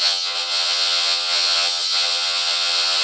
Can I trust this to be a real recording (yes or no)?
no